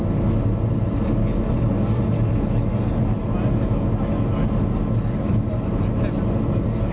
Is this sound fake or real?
real